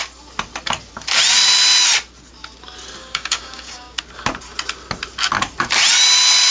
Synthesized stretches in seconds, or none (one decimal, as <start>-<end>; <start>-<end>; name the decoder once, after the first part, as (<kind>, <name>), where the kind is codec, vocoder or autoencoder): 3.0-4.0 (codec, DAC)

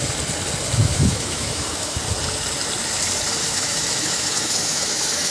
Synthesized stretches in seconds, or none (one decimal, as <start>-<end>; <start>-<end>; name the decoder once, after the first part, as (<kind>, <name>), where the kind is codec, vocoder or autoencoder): 0.8-2.0 (autoencoder, DAC-VAE); 3.4-5.3

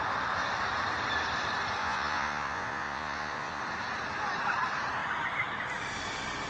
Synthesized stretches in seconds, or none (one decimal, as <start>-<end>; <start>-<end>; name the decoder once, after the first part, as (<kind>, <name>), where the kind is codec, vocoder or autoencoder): 1.8-3.6 (vocoder, Vocos)